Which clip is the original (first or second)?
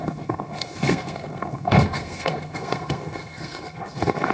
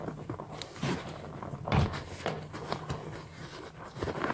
second